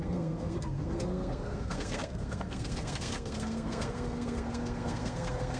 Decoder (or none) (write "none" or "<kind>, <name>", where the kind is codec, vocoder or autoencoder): codec, SNAC